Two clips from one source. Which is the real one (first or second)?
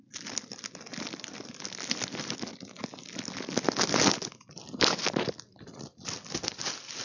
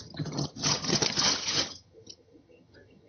first